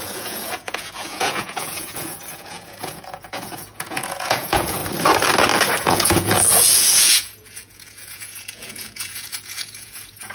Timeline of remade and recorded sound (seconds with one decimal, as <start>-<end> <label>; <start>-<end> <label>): 0.0-4.8 remade; 4.8-5.8 recorded; 5.8-10.3 remade